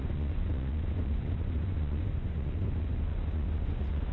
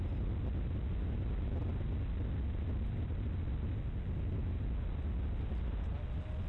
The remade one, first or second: first